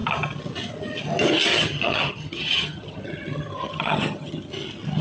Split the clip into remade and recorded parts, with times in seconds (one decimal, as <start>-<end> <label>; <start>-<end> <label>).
0.0-1.5 recorded; 1.5-4.5 remade; 4.5-5.0 recorded